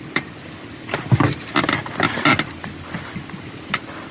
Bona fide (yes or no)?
yes